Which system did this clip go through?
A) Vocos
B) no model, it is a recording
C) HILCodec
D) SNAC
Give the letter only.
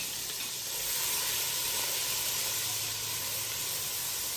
B